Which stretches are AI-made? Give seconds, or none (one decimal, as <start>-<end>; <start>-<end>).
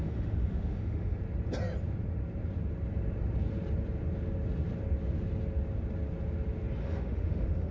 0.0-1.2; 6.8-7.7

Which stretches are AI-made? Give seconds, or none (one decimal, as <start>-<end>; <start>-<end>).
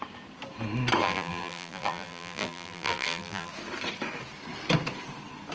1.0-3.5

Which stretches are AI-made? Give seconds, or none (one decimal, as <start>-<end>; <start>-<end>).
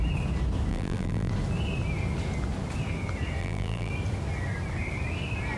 0.7-1.3; 3.4-3.9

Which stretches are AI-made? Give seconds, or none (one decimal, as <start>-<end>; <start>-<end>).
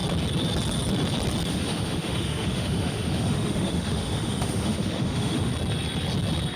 1.5-5.5